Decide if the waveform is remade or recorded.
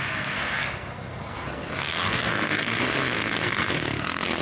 remade